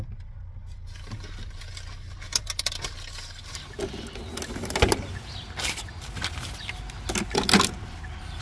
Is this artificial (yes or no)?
no